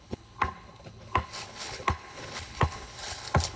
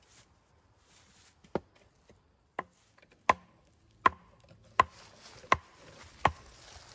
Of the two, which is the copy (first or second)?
first